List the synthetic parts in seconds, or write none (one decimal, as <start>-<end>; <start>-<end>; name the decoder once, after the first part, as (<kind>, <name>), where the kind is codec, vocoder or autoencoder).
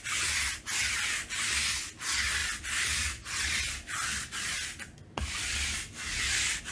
none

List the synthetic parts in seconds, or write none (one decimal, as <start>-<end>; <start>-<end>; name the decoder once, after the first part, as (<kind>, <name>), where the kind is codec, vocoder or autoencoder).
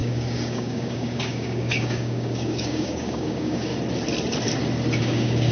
0.0-3.7 (codec, DAC); 5.0-5.5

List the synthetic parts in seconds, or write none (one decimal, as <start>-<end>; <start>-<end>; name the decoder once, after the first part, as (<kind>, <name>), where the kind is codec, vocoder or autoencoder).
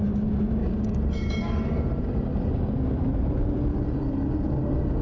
0.6-2.5 (codec, DAC); 3.7-5.0